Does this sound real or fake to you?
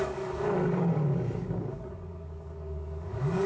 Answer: fake